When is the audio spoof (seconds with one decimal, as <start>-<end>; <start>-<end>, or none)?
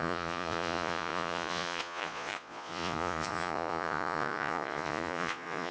0.0-5.7